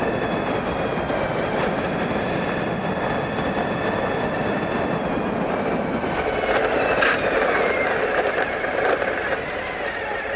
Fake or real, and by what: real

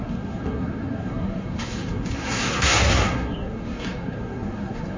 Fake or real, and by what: fake, codec, SNAC